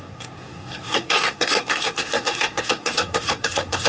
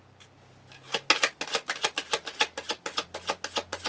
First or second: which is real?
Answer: second